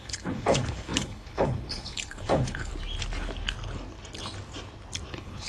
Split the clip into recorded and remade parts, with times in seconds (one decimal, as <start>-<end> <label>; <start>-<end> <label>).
0.0-2.7 remade; 2.7-5.1 recorded; 5.1-5.5 remade